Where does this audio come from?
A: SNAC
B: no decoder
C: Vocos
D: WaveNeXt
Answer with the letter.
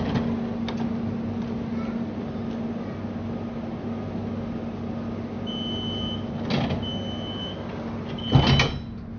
B